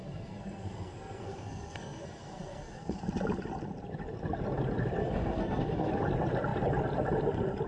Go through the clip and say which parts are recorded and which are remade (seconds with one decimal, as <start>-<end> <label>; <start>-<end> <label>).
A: 0.0-3.0 remade; 3.0-5.0 recorded; 5.0-5.9 remade; 5.9-7.7 recorded

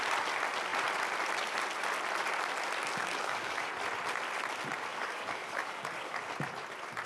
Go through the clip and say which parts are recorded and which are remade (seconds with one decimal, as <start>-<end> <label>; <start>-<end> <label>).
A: 0.0-3.0 recorded; 3.0-3.7 remade; 3.7-4.9 recorded; 4.9-6.2 remade; 6.2-7.1 recorded

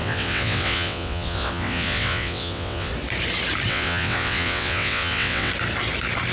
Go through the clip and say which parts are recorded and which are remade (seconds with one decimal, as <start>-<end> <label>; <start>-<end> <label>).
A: 0.0-2.9 remade; 2.9-3.7 recorded; 3.7-5.5 remade; 5.5-6.3 recorded

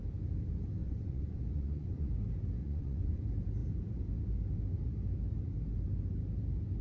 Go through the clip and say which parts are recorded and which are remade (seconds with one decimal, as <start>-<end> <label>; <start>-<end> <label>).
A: 0.0-0.8 recorded; 0.8-2.1 remade; 2.1-2.6 recorded; 2.6-3.2 remade; 3.2-6.8 recorded